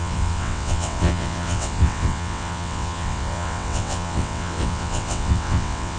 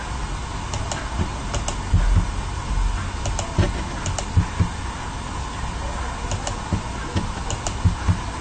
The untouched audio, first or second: second